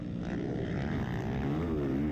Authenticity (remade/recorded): recorded